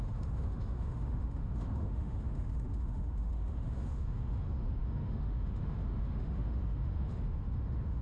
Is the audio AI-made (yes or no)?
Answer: yes